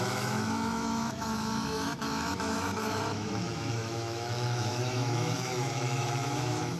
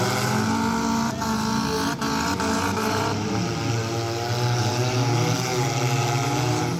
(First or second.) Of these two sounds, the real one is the second